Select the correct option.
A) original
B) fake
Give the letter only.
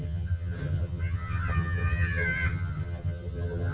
B